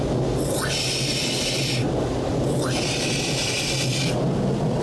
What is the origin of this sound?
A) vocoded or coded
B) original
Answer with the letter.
B